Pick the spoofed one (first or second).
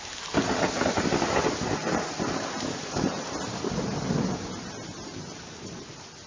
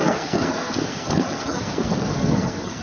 second